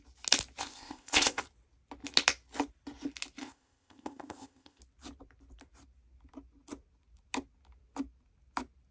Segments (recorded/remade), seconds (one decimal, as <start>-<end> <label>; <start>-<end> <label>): 0.0-0.6 recorded; 0.6-1.4 remade; 1.4-3.4 recorded; 3.4-4.8 remade; 4.8-8.9 recorded